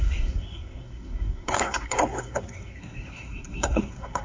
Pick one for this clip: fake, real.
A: fake